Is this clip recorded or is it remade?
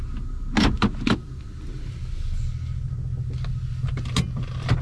recorded